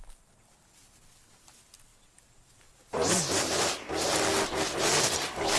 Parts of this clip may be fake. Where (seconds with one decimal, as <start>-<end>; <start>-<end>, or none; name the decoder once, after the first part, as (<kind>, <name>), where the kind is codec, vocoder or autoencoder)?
none